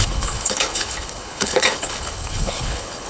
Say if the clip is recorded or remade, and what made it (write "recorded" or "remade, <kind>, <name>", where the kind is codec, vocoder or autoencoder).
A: remade, codec, HILCodec